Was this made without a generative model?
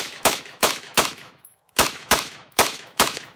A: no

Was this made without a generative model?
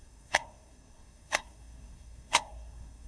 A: no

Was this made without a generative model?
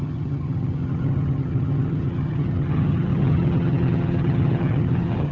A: no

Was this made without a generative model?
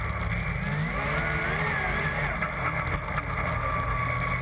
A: yes